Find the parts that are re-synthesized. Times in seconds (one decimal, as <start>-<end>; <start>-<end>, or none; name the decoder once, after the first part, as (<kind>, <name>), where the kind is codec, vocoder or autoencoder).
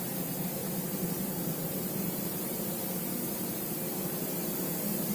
0.6-3.7 (vocoder, BigVGAN v2)